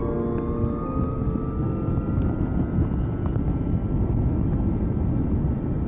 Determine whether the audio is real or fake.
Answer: real